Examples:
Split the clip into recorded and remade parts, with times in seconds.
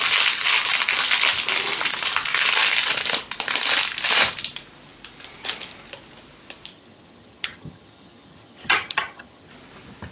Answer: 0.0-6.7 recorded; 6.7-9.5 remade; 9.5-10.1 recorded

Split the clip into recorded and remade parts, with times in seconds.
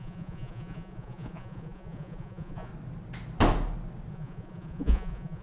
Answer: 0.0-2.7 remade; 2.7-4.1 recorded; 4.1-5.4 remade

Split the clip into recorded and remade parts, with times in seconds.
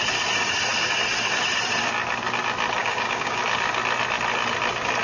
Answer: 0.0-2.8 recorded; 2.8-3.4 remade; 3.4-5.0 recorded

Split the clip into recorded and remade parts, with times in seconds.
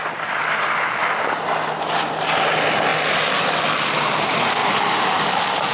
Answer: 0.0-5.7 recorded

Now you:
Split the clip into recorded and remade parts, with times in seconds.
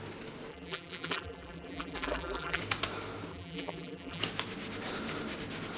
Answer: 0.0-0.5 recorded; 0.5-2.6 remade; 2.6-3.3 recorded; 3.3-4.2 remade; 4.2-5.8 recorded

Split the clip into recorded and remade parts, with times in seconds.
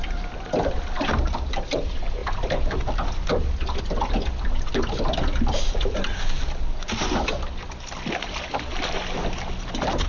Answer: 0.0-10.1 recorded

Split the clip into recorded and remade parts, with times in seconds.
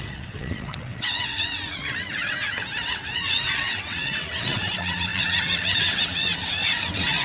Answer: 0.0-7.2 remade